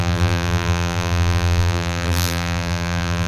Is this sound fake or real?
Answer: fake